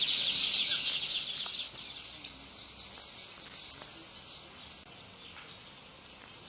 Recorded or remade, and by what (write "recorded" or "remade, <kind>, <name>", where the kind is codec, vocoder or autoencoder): recorded